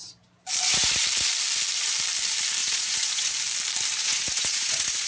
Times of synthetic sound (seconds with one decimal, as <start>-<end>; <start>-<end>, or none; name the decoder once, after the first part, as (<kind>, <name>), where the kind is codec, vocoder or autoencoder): 2.6-3.3 (vocoder, Vocos); 4.0-5.1